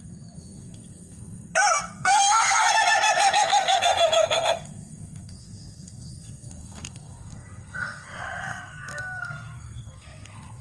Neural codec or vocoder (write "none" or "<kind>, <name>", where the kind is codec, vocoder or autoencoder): codec, SNAC